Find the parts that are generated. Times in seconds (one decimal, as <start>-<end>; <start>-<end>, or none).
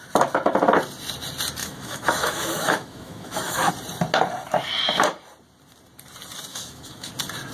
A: 1.6-3.7; 6.5-7.1